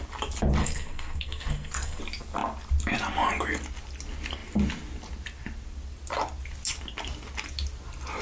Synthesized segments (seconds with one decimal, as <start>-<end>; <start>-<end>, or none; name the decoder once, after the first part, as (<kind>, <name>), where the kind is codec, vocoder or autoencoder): 0.6-2.0 (codec, SNAC)

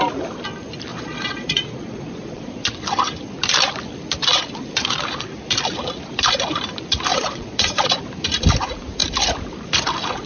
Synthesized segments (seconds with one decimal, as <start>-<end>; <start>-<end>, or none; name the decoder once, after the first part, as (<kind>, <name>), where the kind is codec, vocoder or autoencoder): 0.9-2.5 (vocoder, Vocos); 7.1-8.0

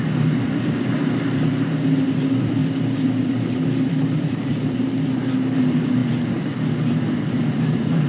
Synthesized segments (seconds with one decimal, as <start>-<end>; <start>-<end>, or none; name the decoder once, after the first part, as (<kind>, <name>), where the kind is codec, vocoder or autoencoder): 0.0-8.1 (vocoder, BigVGAN v2)

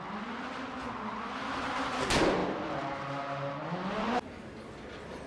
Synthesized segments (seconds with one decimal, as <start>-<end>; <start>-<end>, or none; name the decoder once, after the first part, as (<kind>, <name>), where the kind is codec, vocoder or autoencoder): none